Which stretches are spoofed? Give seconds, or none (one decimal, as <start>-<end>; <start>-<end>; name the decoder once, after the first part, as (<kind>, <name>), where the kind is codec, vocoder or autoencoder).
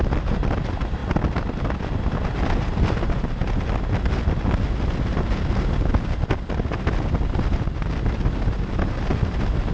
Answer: none